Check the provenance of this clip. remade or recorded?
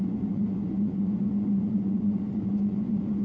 remade